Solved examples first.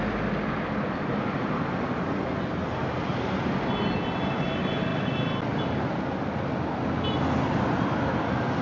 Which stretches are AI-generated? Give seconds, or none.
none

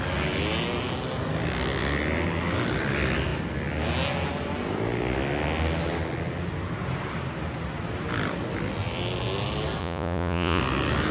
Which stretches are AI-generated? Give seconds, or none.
9.8-10.6 (vocoder, Vocos)

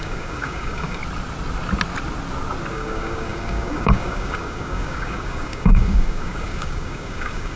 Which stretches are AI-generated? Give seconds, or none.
0.0-1.0 (codec, DAC); 2.7-7.6